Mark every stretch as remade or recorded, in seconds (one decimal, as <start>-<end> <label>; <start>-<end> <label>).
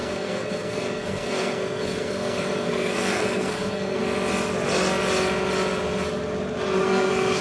0.0-4.0 remade; 4.0-6.8 recorded; 6.8-7.4 remade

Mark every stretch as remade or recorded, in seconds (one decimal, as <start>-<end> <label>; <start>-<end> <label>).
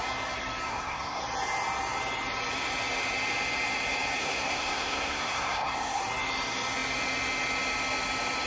0.0-0.7 recorded; 0.7-1.2 remade; 1.2-4.2 recorded; 4.2-6.0 remade; 6.0-8.5 recorded